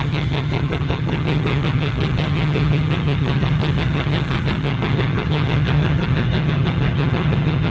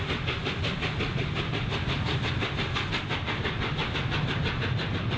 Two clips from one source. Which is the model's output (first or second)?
first